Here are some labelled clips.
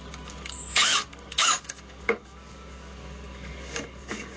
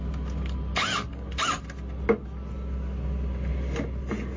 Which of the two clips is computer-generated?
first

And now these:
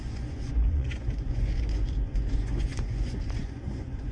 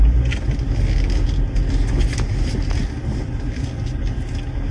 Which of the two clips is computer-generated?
first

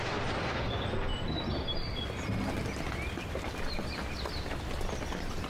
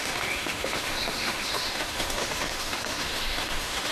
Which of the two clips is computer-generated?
second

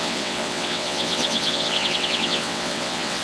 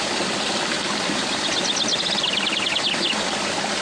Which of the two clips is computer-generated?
first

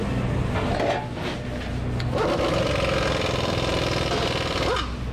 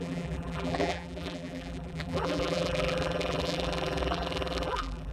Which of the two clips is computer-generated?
second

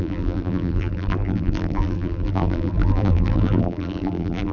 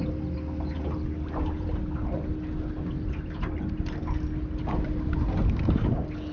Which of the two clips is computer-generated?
first